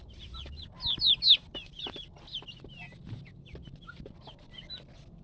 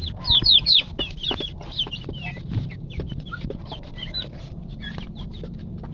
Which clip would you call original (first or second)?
first